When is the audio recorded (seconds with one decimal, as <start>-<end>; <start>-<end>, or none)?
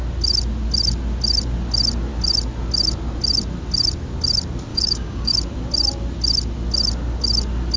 0.0-4.7; 5.3-7.8